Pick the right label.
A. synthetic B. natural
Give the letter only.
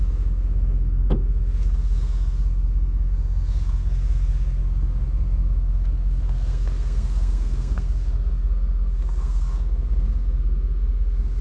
A